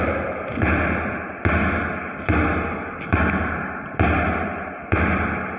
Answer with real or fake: real